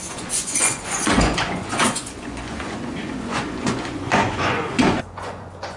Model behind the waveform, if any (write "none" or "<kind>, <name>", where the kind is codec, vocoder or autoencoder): vocoder, Vocos